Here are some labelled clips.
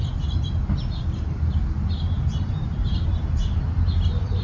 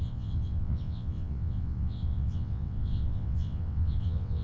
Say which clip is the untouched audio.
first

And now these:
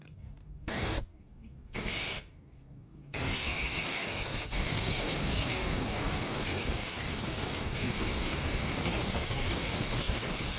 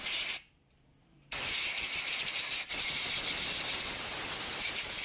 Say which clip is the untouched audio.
second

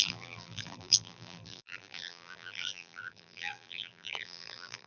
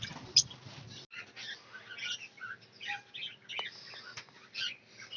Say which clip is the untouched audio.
second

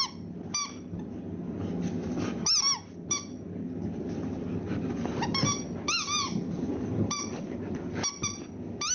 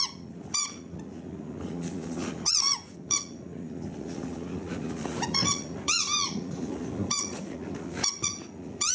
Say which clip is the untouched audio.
first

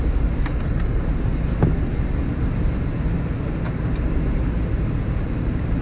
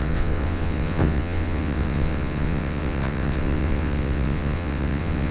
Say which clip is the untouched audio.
first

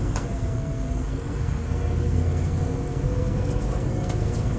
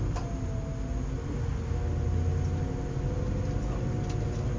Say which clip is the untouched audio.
second